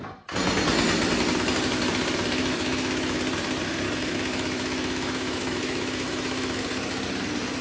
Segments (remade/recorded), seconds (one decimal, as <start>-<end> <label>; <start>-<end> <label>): 0.0-2.4 recorded; 2.4-3.2 remade; 3.2-4.0 recorded; 4.0-6.6 remade; 6.6-7.6 recorded